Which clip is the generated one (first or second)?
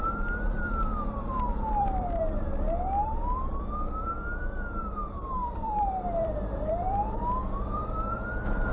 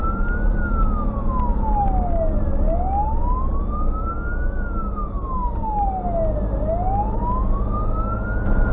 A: first